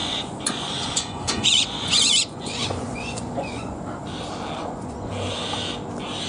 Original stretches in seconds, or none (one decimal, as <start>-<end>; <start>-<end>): 3.8-4.6; 5.1-6.3